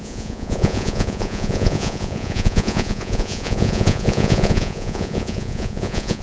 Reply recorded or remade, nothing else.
remade